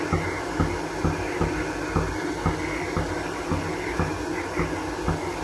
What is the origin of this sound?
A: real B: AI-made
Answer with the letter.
A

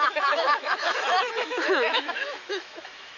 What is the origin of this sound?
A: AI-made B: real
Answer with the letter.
A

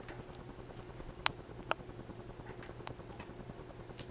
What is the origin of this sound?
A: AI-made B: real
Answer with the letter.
A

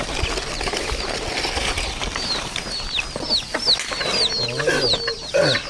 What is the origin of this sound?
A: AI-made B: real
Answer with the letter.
B